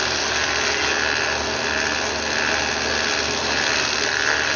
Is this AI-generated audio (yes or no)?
no